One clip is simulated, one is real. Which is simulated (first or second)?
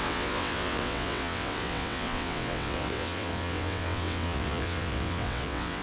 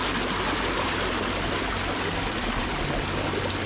first